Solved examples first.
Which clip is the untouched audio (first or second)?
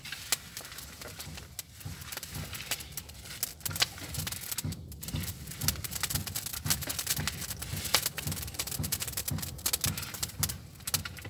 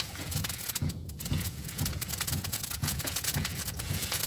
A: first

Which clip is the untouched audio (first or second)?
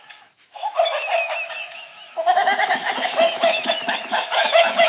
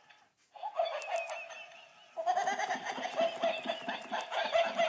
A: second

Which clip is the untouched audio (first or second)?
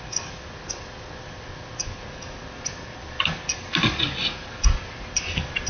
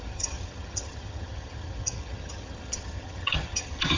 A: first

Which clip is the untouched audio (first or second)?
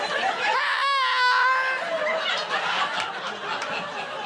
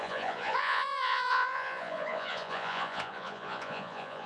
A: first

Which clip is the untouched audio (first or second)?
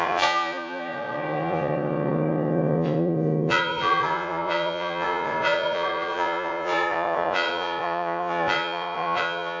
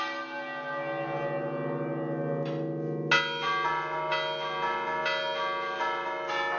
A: second